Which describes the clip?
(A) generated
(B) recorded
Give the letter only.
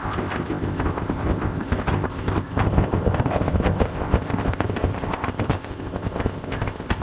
A